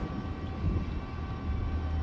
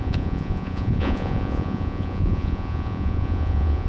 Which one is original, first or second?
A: first